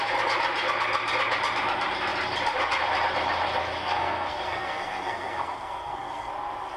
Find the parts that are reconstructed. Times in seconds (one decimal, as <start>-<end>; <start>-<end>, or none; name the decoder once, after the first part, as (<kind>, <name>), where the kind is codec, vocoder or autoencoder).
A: 3.8-6.3 (codec, SNAC)